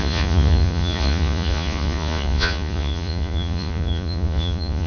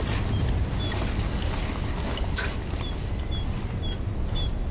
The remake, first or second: first